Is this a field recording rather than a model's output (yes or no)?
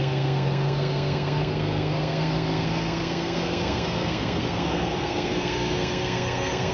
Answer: no